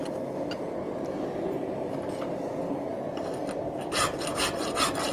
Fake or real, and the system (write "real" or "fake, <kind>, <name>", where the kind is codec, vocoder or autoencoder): real